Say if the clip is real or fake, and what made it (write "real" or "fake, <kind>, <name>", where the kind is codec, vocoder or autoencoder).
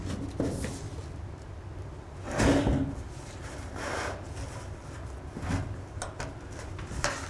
real